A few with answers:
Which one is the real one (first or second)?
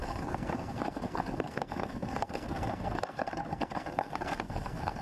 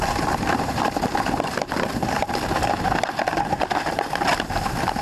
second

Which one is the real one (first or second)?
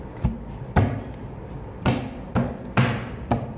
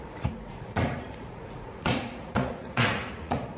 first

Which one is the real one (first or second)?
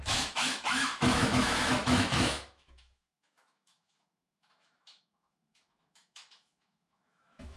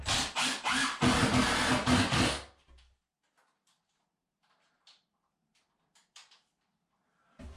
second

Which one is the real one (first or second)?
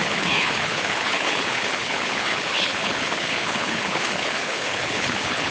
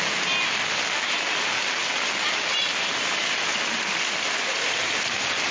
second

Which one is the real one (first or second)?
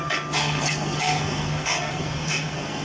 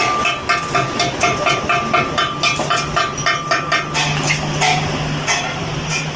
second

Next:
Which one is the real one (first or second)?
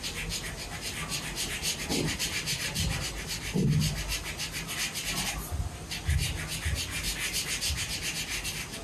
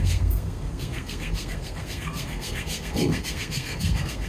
first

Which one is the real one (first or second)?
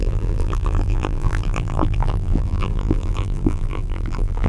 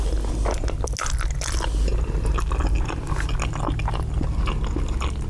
second